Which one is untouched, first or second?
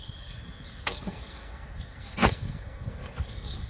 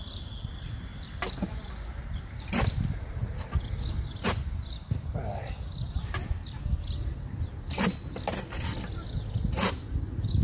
second